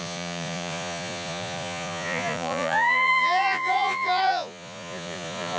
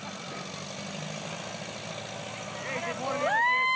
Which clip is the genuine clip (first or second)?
second